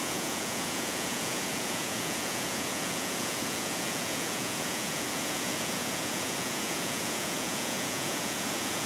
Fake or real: fake